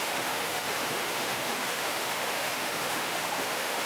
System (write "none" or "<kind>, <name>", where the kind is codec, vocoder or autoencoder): autoencoder, DAC-VAE